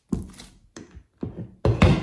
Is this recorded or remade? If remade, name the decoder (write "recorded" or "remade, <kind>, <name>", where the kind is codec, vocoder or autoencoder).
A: recorded